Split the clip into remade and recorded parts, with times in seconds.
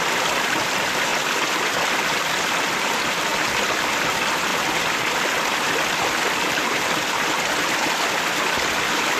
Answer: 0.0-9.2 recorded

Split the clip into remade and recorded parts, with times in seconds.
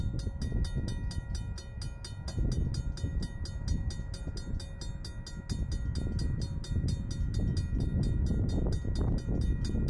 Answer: 0.0-9.9 recorded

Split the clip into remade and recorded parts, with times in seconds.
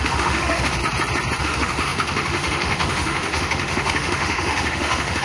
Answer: 0.0-0.8 remade; 0.8-1.4 recorded; 1.4-5.2 remade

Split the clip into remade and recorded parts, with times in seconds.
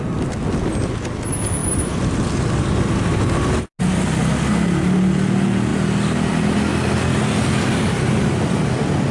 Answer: 0.0-9.1 recorded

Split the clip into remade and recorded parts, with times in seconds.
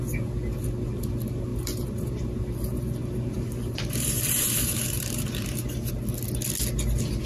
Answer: 0.0-1.5 recorded; 1.5-5.9 remade; 5.9-7.3 recorded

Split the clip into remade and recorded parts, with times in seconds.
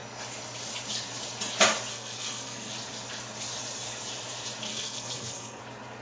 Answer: 0.0-1.9 recorded; 1.9-2.7 remade; 2.7-4.7 recorded; 4.7-5.6 remade; 5.6-6.0 recorded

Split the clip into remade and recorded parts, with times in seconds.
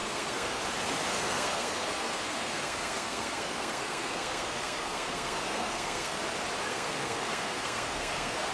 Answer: 0.0-0.6 remade; 0.6-1.1 recorded; 1.1-6.2 remade; 6.2-6.7 recorded; 6.7-8.5 remade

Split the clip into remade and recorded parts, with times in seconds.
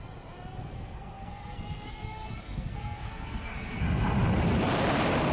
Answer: 0.0-0.6 recorded; 0.6-3.8 remade; 3.8-5.3 recorded